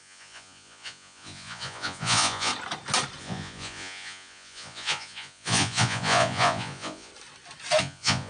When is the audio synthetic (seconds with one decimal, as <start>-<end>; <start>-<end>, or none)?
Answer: 0.0-2.5; 3.2-7.1; 7.8-8.3